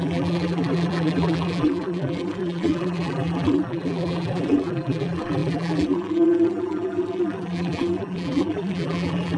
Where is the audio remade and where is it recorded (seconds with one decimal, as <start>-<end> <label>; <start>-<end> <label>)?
0.0-9.4 remade